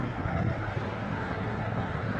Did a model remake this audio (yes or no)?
yes